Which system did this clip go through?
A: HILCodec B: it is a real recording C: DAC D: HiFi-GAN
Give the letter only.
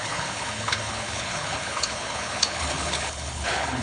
A